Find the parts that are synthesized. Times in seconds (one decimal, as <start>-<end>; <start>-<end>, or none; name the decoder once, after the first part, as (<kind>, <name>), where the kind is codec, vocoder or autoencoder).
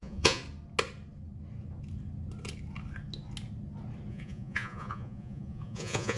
0.0-0.4 (vocoder, Vocos); 4.1-6.2